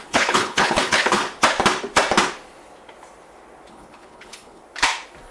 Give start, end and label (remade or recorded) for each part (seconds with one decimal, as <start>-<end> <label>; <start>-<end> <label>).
0.0-1.2 remade; 1.2-3.7 recorded; 3.7-4.6 remade; 4.6-5.3 recorded